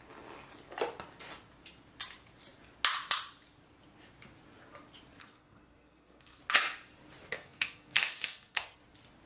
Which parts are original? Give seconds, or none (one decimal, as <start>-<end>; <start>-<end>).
0.0-5.2; 6.4-7.3; 8.8-9.3